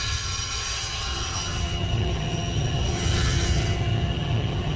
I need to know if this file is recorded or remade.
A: remade